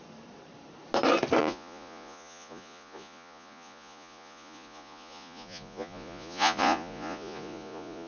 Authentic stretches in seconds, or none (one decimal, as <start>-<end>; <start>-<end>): 0.0-1.4